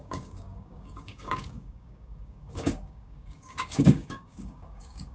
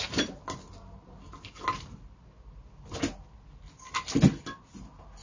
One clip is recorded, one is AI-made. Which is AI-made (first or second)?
first